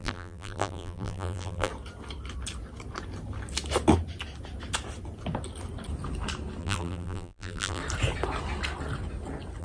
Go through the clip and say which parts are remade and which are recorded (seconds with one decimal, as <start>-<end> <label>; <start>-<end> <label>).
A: 0.0-1.7 remade; 1.7-6.6 recorded; 6.6-7.8 remade; 7.8-9.6 recorded